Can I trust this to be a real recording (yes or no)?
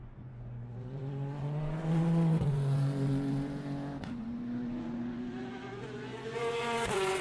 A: no